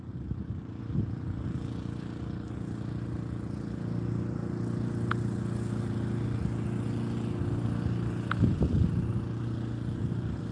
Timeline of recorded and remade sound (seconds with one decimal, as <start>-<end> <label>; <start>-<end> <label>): 0.0-10.5 recorded